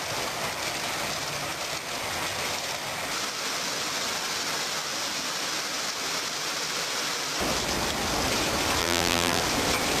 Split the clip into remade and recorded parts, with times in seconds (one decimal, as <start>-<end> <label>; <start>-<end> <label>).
0.0-8.8 recorded; 8.8-9.4 remade; 9.4-10.0 recorded